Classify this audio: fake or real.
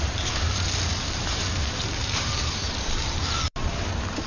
fake